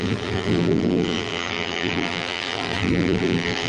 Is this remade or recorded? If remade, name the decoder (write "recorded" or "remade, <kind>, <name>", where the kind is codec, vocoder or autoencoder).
remade, vocoder, BigVGAN v2